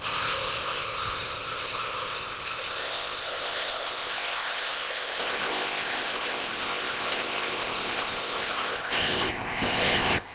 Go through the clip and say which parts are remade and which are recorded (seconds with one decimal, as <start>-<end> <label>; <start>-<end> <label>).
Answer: 0.0-10.3 remade